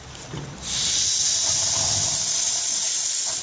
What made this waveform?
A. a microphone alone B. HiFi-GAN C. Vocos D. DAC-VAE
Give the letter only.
A